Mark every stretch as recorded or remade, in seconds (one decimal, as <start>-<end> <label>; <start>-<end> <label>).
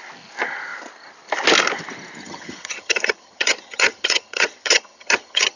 0.0-2.2 recorded; 2.2-5.6 remade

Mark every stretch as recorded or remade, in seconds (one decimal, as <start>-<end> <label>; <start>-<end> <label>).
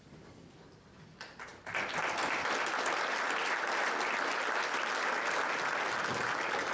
0.0-6.7 recorded